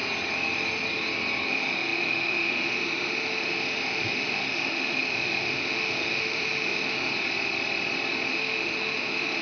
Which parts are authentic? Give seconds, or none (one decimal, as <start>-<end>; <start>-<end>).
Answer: 0.0-1.5; 7.1-8.3